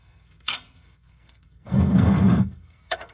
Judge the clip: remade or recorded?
remade